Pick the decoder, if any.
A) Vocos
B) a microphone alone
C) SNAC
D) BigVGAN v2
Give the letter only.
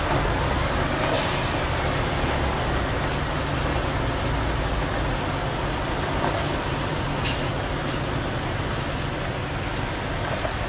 B